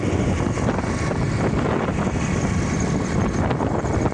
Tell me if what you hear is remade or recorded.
recorded